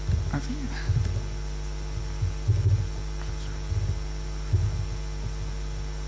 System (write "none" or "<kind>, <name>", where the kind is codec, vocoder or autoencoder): none